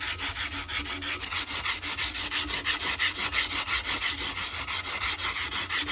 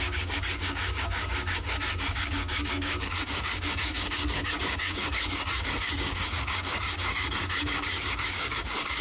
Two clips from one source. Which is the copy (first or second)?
second